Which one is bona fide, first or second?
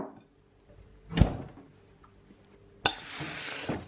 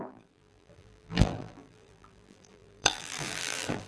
first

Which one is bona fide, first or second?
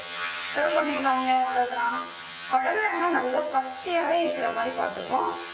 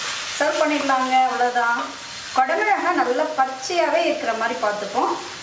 second